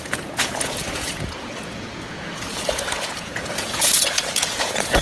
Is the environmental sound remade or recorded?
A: remade